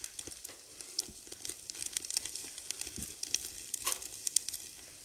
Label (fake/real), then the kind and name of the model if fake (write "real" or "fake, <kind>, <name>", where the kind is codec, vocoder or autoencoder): real